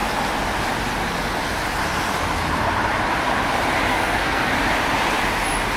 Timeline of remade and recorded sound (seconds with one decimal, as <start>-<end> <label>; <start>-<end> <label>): 0.0-3.9 recorded; 3.9-4.5 remade; 4.5-5.8 recorded